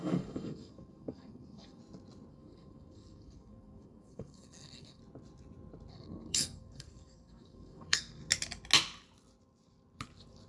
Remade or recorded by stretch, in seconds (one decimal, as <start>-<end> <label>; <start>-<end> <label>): 0.0-1.8 remade; 1.8-2.3 recorded; 2.3-5.0 remade; 5.0-5.9 recorded; 5.9-8.2 remade; 8.2-10.5 recorded